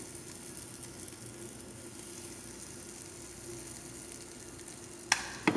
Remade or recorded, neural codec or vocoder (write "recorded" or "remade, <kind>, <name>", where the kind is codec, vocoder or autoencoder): recorded